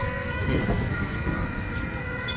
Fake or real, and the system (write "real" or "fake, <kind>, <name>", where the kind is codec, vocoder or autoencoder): fake, codec, SNAC